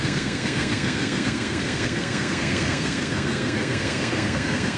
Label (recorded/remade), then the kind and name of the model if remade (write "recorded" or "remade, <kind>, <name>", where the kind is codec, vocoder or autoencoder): remade, codec, SNAC